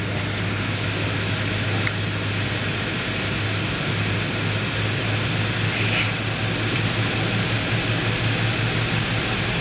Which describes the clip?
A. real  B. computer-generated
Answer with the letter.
A